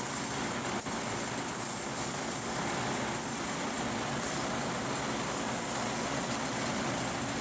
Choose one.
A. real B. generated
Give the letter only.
A